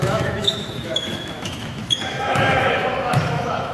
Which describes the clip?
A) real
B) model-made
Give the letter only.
B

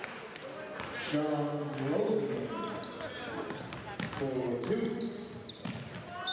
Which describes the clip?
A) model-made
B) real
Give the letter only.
B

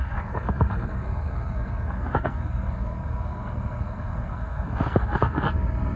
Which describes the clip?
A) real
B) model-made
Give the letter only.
B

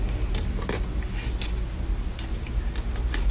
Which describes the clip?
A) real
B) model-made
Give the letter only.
A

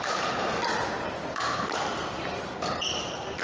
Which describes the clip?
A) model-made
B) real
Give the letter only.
A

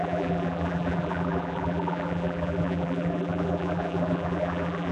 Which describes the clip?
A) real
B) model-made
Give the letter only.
B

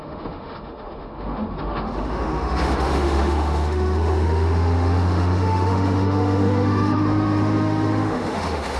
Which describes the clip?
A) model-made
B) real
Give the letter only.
A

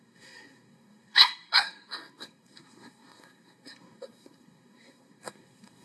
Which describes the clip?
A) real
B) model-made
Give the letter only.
B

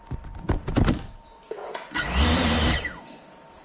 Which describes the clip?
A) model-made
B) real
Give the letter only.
B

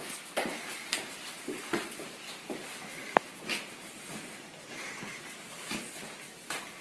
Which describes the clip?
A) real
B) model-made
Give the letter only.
A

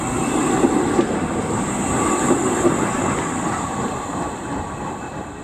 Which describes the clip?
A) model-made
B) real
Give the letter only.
B